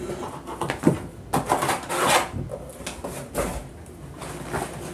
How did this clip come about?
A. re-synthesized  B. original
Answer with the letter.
B